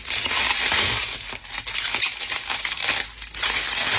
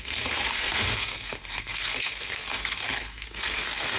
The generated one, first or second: second